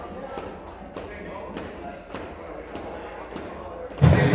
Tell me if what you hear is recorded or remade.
recorded